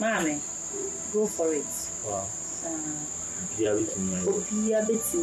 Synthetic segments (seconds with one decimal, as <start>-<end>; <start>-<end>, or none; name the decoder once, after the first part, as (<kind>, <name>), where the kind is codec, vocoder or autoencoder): 0.0-5.2 (vocoder, BigVGAN v2)